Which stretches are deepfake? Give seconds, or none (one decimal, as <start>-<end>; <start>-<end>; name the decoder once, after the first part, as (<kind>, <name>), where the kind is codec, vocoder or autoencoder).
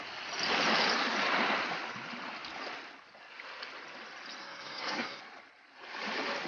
4.4-5.2 (codec, SNAC)